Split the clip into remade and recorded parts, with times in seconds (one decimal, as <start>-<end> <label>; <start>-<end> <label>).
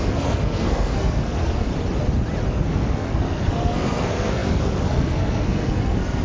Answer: 0.0-1.7 remade; 1.7-2.5 recorded; 2.5-6.2 remade